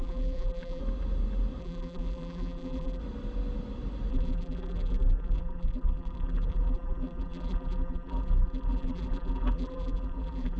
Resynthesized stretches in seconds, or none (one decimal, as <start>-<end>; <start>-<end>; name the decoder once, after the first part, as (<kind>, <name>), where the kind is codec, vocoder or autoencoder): 0.0-0.8 (vocoder, BigVGAN v2); 1.6-3.0; 4.1-10.6